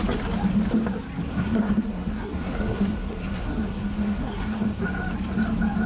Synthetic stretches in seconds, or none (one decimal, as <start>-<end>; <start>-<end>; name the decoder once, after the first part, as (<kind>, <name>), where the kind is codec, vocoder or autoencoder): 1.3-4.8 (codec, SNAC)